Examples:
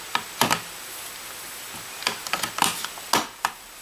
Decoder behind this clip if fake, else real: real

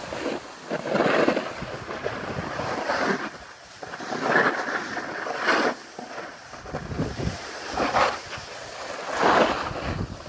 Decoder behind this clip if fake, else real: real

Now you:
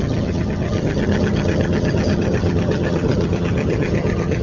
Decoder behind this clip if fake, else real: fake, vocoder, HiFi-GAN